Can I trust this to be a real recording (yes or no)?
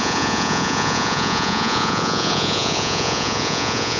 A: no